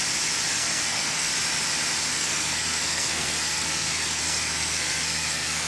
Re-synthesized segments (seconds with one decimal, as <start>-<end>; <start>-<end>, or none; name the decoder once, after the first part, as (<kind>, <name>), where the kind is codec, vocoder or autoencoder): 0.5-1.3 (codec, SNAC); 2.1-5.7

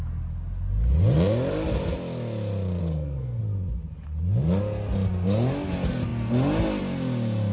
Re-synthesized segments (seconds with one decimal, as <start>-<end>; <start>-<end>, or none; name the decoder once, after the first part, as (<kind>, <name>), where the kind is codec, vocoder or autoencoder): 2.8-3.4 (codec, SNAC)

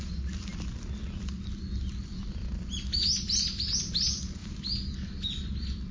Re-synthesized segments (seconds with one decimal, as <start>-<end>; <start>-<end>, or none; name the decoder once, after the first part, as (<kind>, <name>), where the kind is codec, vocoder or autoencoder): none

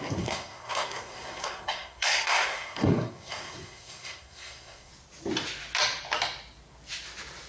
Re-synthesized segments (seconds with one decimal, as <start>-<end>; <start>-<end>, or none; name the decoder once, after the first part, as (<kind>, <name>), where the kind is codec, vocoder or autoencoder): 0.0-4.9 (codec, SNAC)

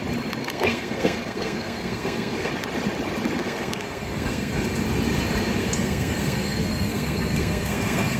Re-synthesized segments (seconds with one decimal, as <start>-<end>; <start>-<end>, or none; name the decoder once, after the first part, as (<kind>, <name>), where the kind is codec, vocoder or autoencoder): 0.4-2.5 (codec, SNAC); 3.4-4.5; 5.6-8.2

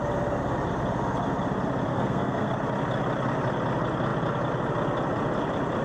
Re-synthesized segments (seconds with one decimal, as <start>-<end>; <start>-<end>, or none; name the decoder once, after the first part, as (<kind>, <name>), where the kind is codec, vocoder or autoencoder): 1.9-2.5 (codec, SNAC)